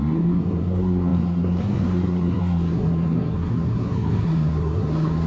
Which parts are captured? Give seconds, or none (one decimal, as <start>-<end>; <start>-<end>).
none